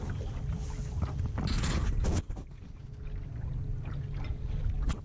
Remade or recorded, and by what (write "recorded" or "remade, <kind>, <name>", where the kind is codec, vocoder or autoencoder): recorded